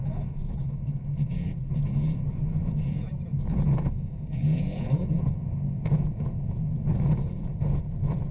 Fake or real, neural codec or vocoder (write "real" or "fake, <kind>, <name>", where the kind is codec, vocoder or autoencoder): fake, vocoder, Vocos